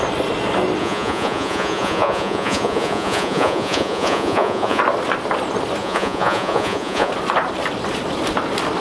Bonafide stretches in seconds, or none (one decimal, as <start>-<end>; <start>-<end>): 0.0-0.8; 4.8-5.8; 7.1-8.8